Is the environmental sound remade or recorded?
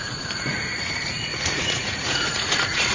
remade